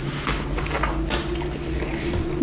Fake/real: real